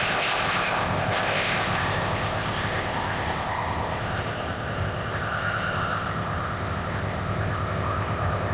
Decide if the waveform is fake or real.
fake